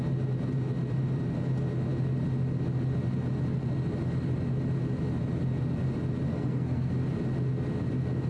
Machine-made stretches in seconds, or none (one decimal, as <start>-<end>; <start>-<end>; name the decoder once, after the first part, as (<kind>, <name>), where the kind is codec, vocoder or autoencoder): 6.3-6.9 (codec, SNAC)